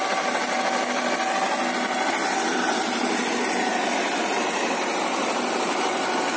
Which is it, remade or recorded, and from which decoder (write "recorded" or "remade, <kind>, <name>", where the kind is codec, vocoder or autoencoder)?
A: recorded